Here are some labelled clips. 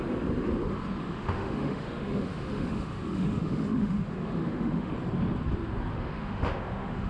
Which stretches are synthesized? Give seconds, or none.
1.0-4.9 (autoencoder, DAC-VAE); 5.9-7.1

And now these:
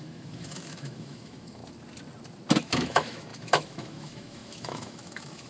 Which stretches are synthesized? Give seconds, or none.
0.0-1.6 (autoencoder, DAC-VAE); 2.6-5.5

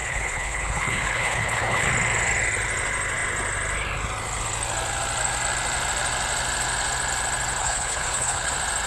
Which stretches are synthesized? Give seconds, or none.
0.0-1.9 (codec, HILCodec); 7.6-8.5

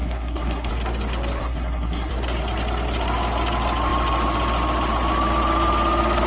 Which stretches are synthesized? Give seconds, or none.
0.0-0.7 (codec, SNAC); 1.4-2.1

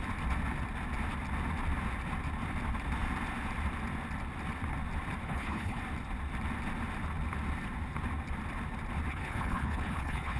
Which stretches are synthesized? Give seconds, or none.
5.2-5.8 (codec, HILCodec); 9.1-10.4

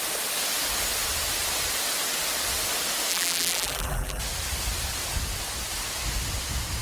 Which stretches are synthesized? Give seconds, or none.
3.1-4.2 (vocoder, BigVGAN v2)

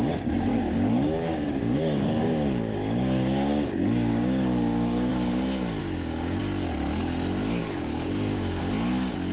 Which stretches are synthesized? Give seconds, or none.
0.5-5.1 (codec, DAC); 5.8-6.4; 7.6-8.6